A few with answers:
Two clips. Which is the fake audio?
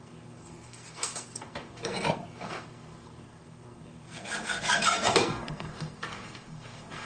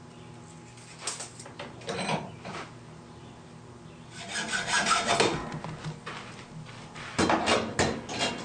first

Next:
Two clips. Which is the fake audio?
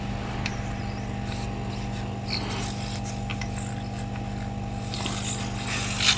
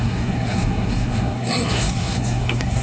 second